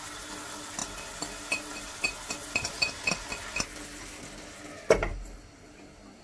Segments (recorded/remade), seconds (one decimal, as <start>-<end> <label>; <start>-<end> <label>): 0.0-6.2 recorded